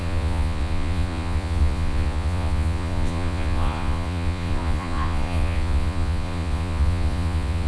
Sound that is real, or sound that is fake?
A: fake